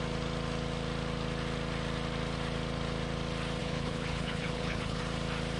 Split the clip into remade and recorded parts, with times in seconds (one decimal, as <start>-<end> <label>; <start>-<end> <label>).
0.0-3.6 recorded; 3.6-5.0 remade; 5.0-5.6 recorded